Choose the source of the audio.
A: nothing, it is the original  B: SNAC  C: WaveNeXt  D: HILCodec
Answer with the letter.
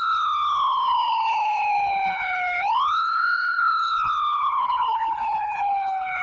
D